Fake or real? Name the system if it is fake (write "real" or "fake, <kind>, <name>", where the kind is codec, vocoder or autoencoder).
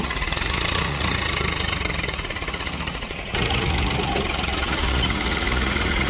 fake, vocoder, Vocos